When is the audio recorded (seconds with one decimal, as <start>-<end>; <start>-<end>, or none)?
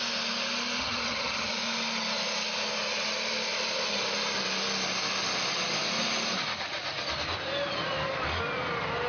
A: 0.0-0.8; 1.5-9.1